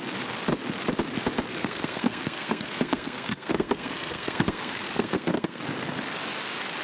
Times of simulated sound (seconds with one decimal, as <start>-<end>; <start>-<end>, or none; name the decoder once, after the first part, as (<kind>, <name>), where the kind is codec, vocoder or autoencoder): 1.5-5.6 (codec, SNAC)